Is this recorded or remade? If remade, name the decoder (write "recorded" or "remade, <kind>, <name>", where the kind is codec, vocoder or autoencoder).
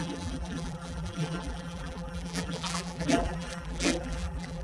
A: remade, vocoder, BigVGAN v2